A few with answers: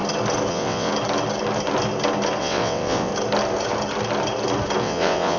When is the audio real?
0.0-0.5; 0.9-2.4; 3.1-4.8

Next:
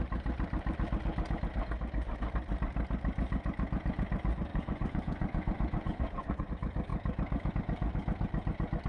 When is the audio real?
0.0-4.5; 6.5-8.9